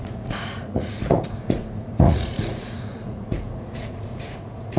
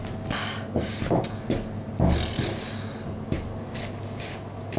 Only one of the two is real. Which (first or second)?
second